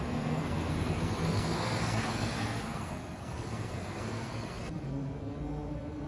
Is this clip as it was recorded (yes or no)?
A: no